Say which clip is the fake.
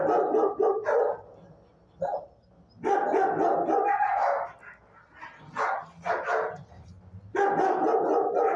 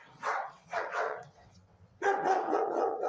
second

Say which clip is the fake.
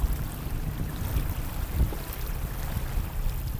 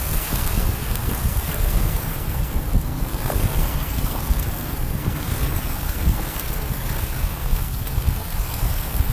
second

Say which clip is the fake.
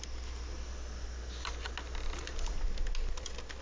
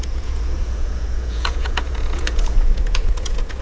second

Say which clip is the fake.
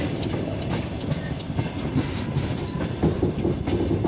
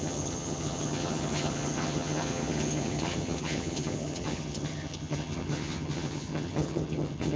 second